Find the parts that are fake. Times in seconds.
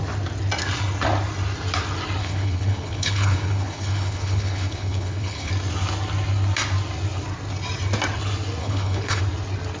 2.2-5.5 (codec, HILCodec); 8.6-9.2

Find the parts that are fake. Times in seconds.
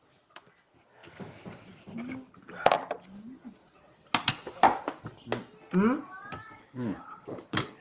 6.6-7.8 (codec, HILCodec)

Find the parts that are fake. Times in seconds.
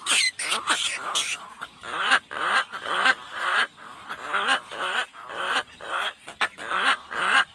none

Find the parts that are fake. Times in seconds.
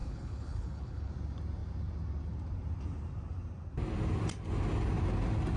0.0-1.1 (codec, HILCodec)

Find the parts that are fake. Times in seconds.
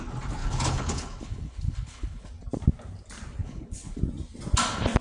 0.4-2.3 (codec, HILCodec); 3.4-4.0